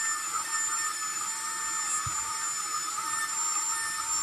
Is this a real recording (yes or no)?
yes